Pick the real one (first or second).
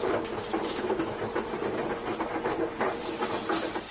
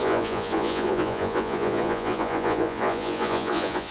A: first